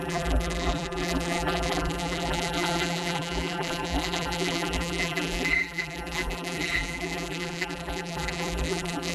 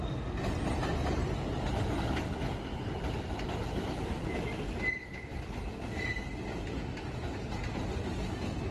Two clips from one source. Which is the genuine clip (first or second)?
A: second